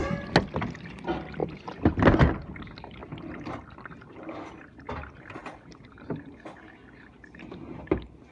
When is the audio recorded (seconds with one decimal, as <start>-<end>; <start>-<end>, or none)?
0.0-8.3